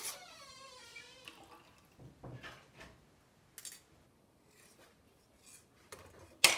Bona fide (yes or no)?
yes